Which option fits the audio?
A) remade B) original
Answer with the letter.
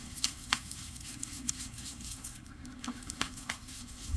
A